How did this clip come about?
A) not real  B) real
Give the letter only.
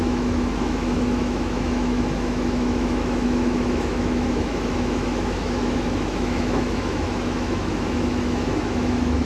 A